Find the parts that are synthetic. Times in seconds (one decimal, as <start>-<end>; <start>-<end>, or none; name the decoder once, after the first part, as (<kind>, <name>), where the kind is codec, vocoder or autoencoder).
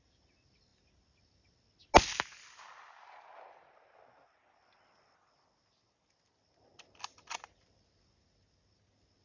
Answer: none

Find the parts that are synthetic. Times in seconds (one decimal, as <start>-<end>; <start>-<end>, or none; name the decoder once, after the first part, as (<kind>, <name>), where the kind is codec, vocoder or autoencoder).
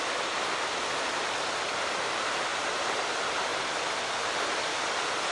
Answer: none